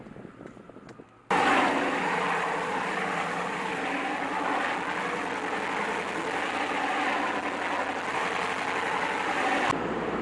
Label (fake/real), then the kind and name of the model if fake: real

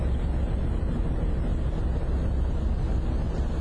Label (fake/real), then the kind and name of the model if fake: real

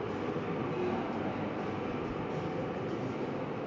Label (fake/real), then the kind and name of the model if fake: real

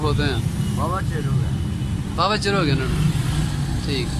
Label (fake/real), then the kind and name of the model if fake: real